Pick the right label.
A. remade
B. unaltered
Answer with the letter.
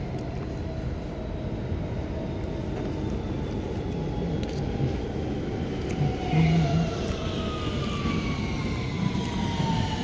B